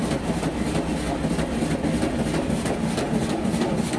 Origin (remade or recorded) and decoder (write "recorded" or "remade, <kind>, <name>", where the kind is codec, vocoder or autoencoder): recorded